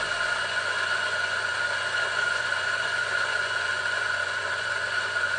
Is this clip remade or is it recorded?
remade